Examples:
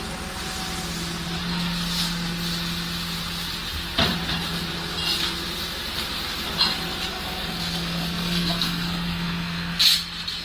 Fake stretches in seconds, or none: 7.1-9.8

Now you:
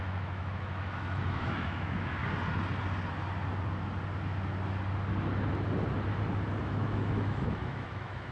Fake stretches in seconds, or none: 0.0-2.2; 6.6-8.3

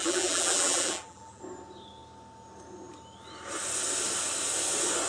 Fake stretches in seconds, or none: 0.0-1.4

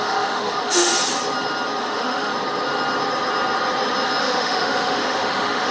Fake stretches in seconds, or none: 0.0-0.9; 1.8-2.3; 4.2-5.7